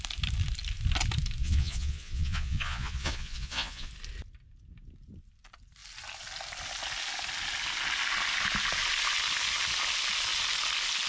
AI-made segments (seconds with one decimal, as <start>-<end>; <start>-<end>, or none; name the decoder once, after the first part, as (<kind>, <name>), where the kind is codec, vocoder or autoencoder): 1.4-3.9 (vocoder, Vocos)